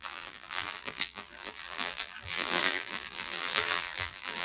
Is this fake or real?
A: fake